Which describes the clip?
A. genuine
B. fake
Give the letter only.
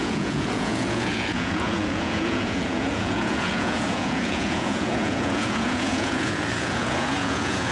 B